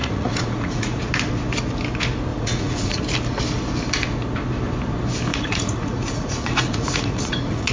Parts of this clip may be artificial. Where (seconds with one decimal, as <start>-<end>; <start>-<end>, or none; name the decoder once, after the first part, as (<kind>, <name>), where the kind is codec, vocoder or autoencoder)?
0.0-1.0 (vocoder, Vocos); 2.3-3.0; 5.3-7.7